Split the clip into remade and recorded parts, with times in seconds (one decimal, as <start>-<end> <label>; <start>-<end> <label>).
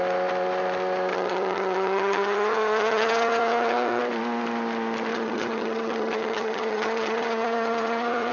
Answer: 0.0-1.1 recorded; 1.1-4.0 remade; 4.0-5.1 recorded; 5.1-8.3 remade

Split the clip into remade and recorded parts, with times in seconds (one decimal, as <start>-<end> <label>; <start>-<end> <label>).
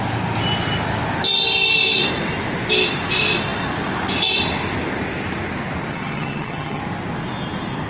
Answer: 0.0-5.9 recorded; 5.9-6.8 remade; 6.8-7.9 recorded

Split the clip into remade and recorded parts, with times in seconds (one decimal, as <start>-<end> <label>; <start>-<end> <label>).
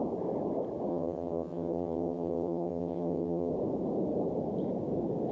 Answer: 0.0-0.9 recorded; 0.9-3.5 remade; 3.5-5.3 recorded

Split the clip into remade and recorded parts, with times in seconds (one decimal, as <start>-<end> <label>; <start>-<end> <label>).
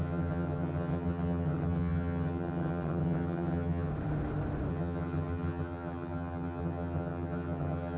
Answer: 0.0-3.9 remade; 3.9-4.7 recorded; 4.7-8.0 remade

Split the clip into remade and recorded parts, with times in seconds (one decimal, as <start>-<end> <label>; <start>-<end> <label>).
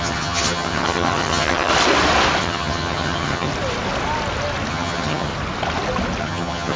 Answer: 0.0-1.7 remade; 1.7-2.4 recorded; 2.4-3.5 remade; 3.5-4.7 recorded; 4.7-5.3 remade; 5.3-6.2 recorded; 6.2-6.8 remade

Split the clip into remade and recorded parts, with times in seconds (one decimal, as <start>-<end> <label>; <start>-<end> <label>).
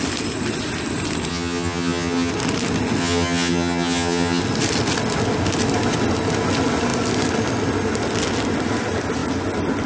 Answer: 0.0-1.3 recorded; 1.3-2.3 remade; 2.3-3.0 recorded; 3.0-4.4 remade; 4.4-9.9 recorded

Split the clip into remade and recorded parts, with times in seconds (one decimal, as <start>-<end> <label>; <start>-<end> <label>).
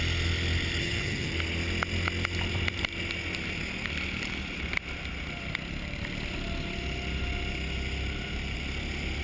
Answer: 0.0-0.8 recorded; 0.8-1.3 remade; 1.3-9.2 recorded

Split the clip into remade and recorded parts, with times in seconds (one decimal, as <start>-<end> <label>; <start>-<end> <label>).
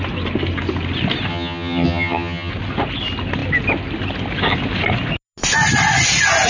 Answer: 0.0-1.3 recorded; 1.3-2.5 remade; 2.5-6.5 recorded